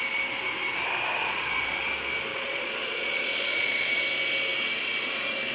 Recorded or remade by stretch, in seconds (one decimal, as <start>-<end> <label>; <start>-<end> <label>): 0.0-1.2 recorded; 1.2-1.8 remade; 1.8-2.3 recorded; 2.3-4.0 remade; 4.0-5.5 recorded